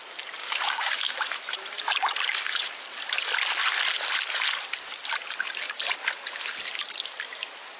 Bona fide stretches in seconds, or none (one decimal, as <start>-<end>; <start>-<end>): 0.0-0.4; 1.0-7.8